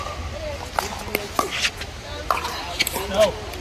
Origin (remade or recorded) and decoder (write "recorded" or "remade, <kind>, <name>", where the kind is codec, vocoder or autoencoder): recorded